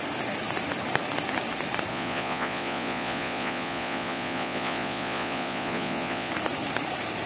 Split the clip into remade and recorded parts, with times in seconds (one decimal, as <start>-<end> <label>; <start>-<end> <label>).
0.0-1.9 recorded; 1.9-6.3 remade; 6.3-7.3 recorded

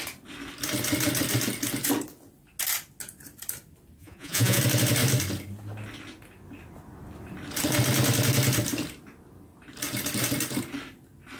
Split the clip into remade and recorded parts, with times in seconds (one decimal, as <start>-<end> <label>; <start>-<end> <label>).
0.0-4.0 recorded; 4.0-4.6 remade; 4.6-11.4 recorded

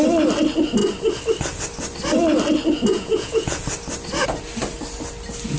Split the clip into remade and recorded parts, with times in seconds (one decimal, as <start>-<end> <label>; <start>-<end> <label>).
0.0-2.9 recorded; 2.9-3.6 remade; 3.6-5.6 recorded

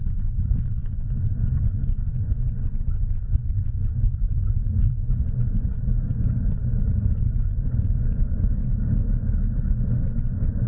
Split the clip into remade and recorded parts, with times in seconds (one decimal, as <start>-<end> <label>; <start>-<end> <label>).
0.0-8.7 remade; 8.7-9.6 recorded; 9.6-10.7 remade

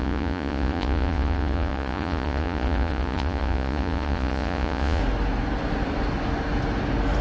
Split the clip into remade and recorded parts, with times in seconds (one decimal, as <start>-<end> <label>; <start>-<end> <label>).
0.0-5.0 remade; 5.0-7.2 recorded

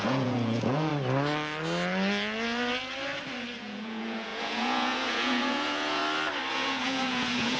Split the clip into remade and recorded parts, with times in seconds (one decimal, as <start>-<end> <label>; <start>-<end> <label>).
0.0-0.9 remade; 0.9-3.6 recorded; 3.6-6.0 remade; 6.0-6.5 recorded; 6.5-7.6 remade